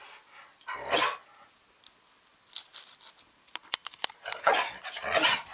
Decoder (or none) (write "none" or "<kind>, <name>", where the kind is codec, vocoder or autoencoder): none